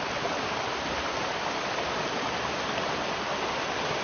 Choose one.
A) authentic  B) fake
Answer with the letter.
A